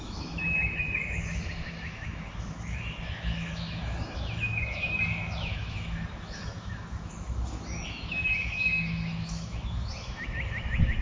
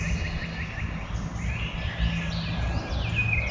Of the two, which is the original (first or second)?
second